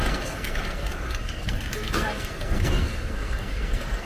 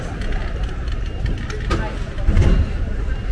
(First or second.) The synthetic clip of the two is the first